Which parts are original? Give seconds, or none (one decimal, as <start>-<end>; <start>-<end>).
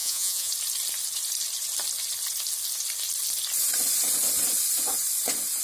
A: 0.5-5.6